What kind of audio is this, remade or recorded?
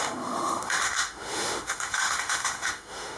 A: remade